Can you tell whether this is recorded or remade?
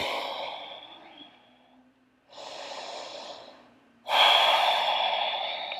recorded